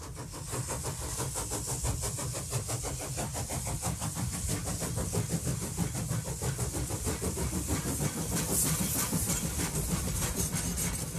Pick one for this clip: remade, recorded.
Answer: recorded